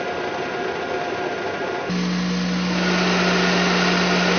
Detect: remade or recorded recorded